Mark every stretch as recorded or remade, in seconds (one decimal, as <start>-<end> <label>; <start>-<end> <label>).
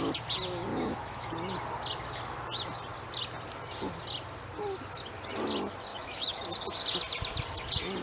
0.0-0.7 recorded; 0.7-1.3 remade; 1.3-5.9 recorded; 5.9-6.4 remade; 6.4-8.0 recorded